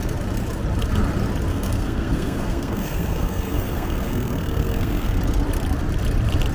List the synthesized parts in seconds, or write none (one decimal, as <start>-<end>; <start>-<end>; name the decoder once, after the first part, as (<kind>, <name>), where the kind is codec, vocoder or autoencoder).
1.5-5.2 (codec, SNAC)